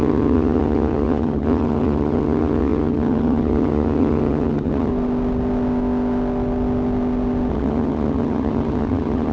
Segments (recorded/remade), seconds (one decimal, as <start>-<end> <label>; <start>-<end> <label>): 0.0-4.9 remade; 4.9-7.5 recorded; 7.5-9.3 remade